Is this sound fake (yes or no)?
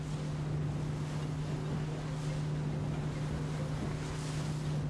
no